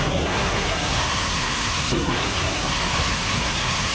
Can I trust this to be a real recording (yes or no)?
no